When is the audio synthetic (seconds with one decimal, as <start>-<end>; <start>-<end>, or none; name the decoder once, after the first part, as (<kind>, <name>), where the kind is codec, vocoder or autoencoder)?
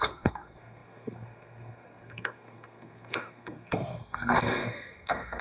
0.0-5.4 (codec, SNAC)